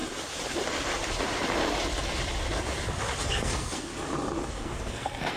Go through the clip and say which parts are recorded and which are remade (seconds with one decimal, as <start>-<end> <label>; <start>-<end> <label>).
0.0-3.2 recorded; 3.2-3.9 remade; 3.9-4.5 recorded; 4.5-5.4 remade